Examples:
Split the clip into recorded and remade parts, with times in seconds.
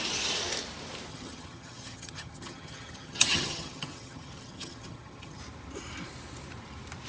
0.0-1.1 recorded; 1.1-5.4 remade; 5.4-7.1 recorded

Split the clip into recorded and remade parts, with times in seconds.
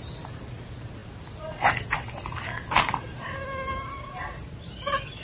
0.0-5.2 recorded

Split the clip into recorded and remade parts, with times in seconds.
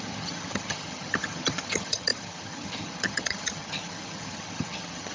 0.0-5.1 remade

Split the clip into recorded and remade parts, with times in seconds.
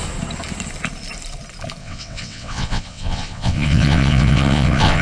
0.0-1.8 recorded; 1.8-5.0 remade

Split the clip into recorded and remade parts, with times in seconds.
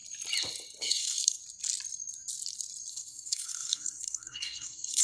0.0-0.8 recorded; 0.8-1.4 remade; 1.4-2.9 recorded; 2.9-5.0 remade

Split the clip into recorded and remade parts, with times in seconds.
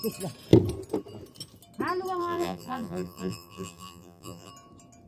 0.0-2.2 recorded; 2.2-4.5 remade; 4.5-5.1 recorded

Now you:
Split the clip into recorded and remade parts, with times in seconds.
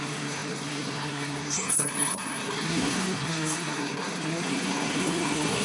0.0-5.6 remade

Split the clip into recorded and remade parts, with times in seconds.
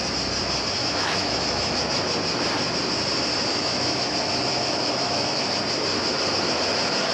0.0-0.8 recorded; 0.8-1.8 remade; 1.8-3.5 recorded; 3.5-4.1 remade; 4.1-4.5 recorded; 4.5-5.5 remade; 5.5-7.1 recorded